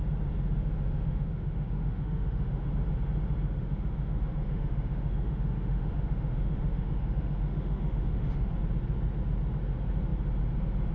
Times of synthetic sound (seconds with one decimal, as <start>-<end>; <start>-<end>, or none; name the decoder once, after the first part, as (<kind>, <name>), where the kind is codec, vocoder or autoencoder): 0.6-2.7 (autoencoder, DAC-VAE); 3.6-8.5